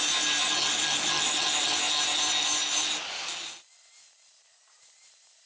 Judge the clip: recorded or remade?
recorded